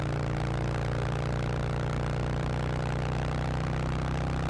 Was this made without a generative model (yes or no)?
yes